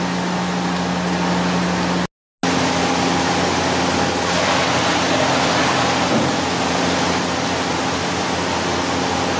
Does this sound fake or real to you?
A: real